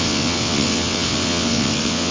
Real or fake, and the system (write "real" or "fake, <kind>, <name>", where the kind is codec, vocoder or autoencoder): fake, vocoder, WaveNeXt